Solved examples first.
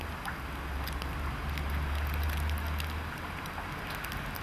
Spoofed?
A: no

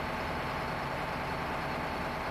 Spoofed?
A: no